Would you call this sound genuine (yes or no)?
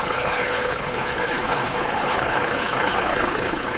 no